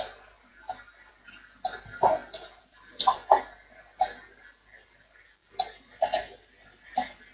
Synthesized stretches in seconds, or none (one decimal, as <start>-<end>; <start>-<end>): 2.2-3.4